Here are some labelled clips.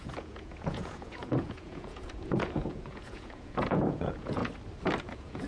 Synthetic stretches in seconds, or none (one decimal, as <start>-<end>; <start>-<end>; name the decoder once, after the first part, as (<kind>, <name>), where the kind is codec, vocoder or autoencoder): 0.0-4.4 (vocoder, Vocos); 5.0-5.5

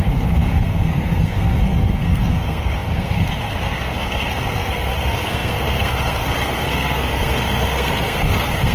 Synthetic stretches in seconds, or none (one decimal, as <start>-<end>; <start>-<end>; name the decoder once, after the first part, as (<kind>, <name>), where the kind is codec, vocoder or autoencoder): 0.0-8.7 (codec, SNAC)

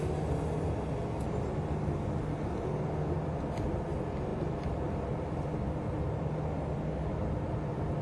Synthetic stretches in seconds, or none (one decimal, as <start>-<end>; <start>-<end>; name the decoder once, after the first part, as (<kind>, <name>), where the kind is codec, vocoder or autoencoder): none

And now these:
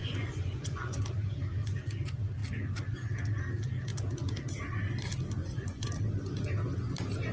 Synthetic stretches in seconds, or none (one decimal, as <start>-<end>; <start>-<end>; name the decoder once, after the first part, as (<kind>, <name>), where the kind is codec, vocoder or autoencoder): 0.0-1.0 (vocoder, Vocos); 5.4-5.9